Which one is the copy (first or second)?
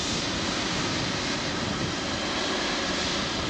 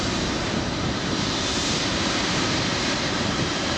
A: second